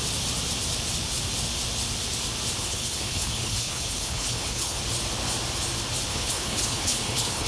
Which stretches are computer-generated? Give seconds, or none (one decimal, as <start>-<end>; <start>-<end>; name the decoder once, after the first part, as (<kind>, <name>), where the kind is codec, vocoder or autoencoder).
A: 2.6-4.8 (codec, HILCodec); 6.1-7.5